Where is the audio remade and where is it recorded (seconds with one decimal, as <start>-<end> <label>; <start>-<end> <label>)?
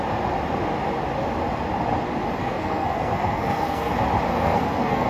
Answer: 0.0-2.4 recorded; 2.4-3.9 remade; 3.9-4.3 recorded; 4.3-5.1 remade